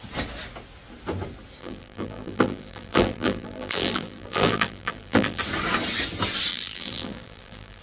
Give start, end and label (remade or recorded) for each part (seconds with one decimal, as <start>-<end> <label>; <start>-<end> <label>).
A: 0.0-1.6 recorded; 1.6-5.4 remade; 5.4-6.5 recorded; 6.5-7.8 remade